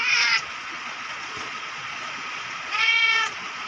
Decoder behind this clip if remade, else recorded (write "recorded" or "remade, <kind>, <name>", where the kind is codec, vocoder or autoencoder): remade, vocoder, Vocos